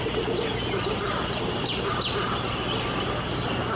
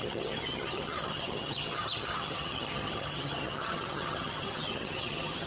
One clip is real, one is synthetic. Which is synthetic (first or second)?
second